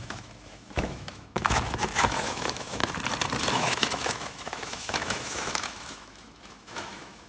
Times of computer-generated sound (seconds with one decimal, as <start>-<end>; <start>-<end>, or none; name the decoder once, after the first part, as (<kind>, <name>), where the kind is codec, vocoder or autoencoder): 0.0-2.8 (autoencoder, DAC-VAE); 3.5-7.3